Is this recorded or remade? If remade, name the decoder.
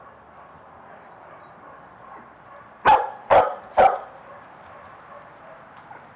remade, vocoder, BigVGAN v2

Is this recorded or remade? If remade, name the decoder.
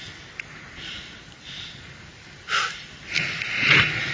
recorded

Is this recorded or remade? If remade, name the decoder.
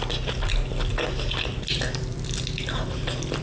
recorded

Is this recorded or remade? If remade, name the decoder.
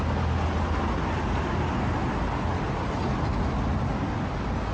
recorded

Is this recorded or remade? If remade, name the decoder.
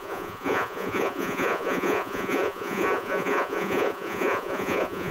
remade, vocoder, Vocos